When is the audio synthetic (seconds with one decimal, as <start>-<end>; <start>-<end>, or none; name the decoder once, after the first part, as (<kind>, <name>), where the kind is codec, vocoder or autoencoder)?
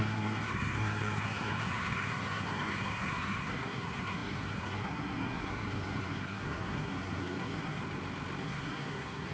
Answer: 0.0-7.8 (codec, SNAC); 8.4-9.3